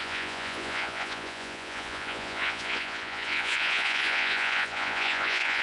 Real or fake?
fake